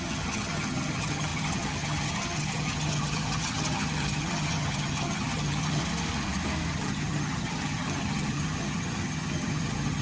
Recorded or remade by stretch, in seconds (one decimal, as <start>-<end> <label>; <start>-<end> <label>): 0.0-5.8 remade; 5.8-6.7 recorded; 6.7-10.0 remade